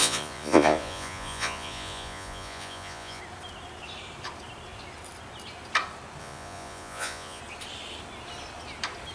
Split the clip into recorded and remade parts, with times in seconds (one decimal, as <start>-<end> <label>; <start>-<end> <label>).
0.0-3.2 remade; 3.2-6.2 recorded; 6.2-7.4 remade; 7.4-9.1 recorded

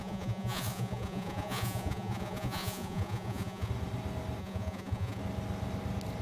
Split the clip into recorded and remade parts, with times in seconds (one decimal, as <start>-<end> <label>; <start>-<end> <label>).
0.0-3.7 remade; 3.7-4.4 recorded; 4.4-5.2 remade; 5.2-6.2 recorded

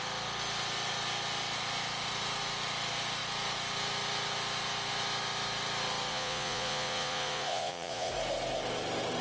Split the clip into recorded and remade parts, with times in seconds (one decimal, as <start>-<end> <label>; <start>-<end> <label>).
0.0-6.1 recorded; 6.1-8.1 remade; 8.1-9.2 recorded

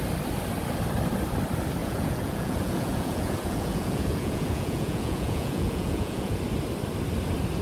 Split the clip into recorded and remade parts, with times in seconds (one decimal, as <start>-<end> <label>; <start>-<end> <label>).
0.0-1.8 recorded; 1.8-6.4 remade; 6.4-7.6 recorded

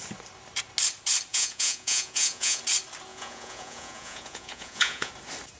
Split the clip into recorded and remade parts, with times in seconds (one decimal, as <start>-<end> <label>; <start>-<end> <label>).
0.0-1.3 recorded; 1.3-2.6 remade; 2.6-3.1 recorded; 3.1-5.1 remade; 5.1-5.6 recorded

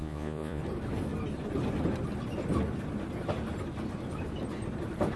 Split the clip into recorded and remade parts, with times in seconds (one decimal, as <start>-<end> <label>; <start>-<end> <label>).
0.0-0.6 remade; 0.6-5.2 recorded